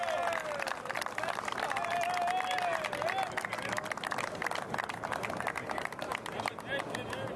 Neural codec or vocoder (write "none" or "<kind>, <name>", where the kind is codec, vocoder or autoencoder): none